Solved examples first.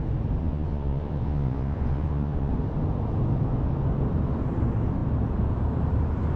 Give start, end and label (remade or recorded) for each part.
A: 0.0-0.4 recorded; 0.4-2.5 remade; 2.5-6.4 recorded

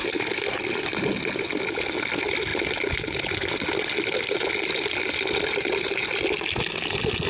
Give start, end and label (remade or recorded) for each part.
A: 0.0-7.3 recorded

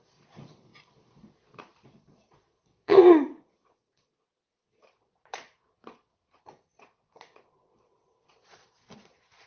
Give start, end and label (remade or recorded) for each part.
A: 0.0-9.5 remade

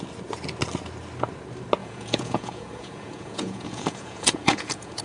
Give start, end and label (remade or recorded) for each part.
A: 0.0-1.8 recorded; 1.8-5.0 remade

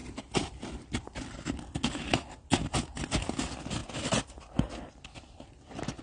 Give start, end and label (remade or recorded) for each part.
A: 0.0-6.0 recorded

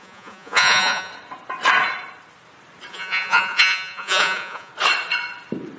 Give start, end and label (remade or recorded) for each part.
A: 0.0-1.1 remade; 1.1-2.9 recorded; 2.9-4.7 remade; 4.7-5.8 recorded

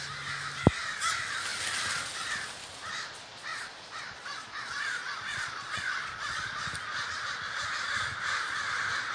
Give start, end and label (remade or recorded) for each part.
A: 0.0-3.5 recorded; 3.5-6.6 remade; 6.6-9.1 recorded